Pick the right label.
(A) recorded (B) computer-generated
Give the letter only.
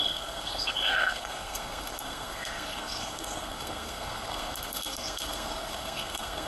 B